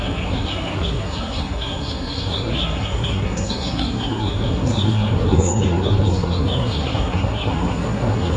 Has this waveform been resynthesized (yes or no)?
yes